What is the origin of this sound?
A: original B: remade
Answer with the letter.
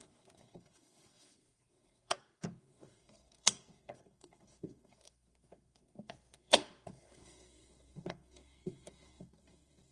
B